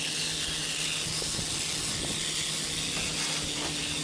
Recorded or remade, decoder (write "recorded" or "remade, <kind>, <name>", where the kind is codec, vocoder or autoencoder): recorded